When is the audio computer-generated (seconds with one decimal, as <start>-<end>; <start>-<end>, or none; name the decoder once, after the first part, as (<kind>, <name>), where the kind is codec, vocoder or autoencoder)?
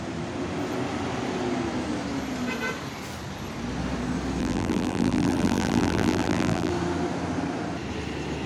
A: 4.4-6.7 (vocoder, BigVGAN v2)